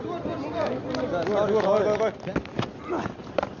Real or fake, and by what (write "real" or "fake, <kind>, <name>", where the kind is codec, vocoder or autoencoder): real